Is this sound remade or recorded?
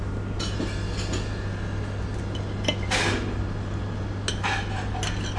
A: recorded